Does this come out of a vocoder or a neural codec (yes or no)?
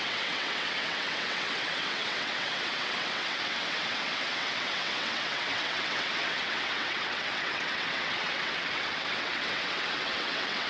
yes